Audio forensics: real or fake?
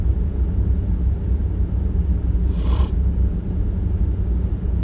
real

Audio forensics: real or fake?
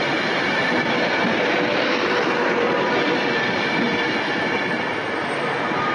real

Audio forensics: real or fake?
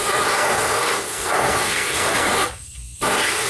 fake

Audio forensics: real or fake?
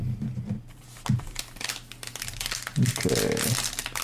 real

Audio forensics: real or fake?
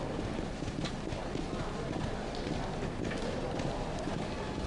real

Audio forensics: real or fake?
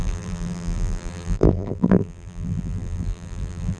fake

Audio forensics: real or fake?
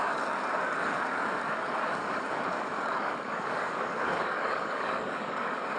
fake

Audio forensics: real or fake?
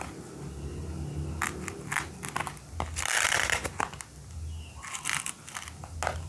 real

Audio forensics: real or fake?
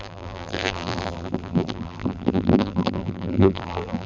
fake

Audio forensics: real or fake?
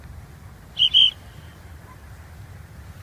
real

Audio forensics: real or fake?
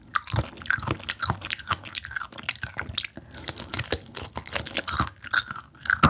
real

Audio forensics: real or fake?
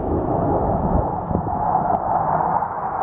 fake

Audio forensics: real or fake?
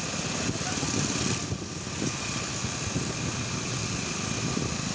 real